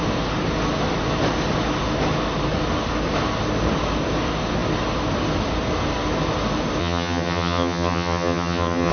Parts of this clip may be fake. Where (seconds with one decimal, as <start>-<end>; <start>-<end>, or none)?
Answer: 6.8-8.9